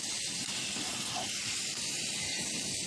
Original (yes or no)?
yes